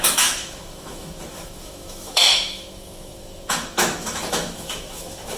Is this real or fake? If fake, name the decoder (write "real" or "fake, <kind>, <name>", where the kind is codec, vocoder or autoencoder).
fake, autoencoder, DAC-VAE